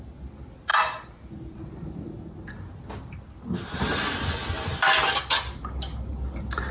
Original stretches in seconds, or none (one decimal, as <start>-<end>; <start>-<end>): 0.0-6.7